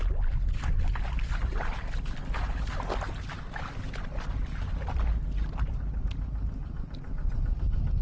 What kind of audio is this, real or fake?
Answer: real